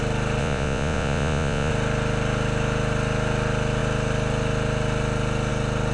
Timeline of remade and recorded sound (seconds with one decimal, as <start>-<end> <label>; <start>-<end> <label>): 0.0-0.4 recorded; 0.4-1.7 remade; 1.7-5.9 recorded